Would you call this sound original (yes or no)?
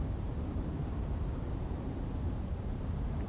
no